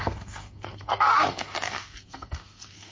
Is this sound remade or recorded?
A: remade